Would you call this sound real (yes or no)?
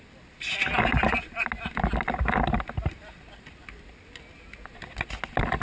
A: yes